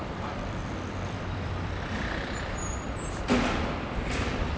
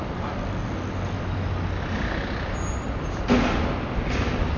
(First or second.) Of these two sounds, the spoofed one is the first